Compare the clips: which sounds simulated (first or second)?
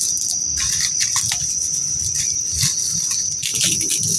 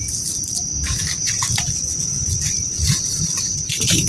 second